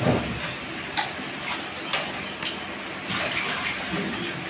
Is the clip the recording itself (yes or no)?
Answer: yes